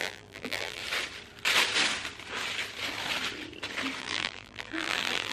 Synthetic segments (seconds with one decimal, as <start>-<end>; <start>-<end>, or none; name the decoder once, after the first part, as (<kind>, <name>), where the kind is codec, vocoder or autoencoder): 0.0-0.8 (vocoder, BigVGAN v2); 4.0-5.3